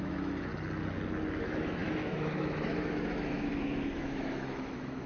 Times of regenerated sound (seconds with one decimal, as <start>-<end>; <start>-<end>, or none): 0.0-0.5; 1.4-5.1